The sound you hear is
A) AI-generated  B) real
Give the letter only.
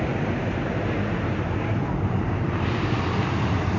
B